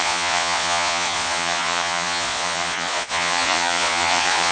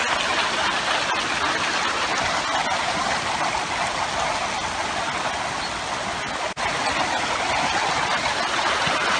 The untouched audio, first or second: second